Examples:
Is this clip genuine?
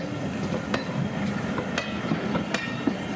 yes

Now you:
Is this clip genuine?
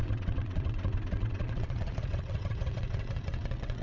no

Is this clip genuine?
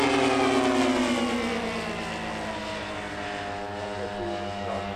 yes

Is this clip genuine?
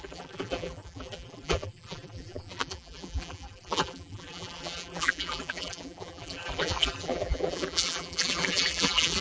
no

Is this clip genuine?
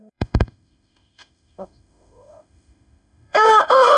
no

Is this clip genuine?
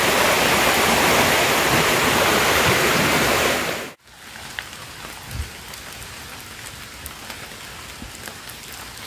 yes